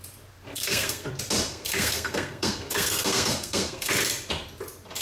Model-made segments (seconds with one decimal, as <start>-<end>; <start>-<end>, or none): 0.5-1.1; 1.5-3.9